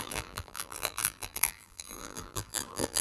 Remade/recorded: remade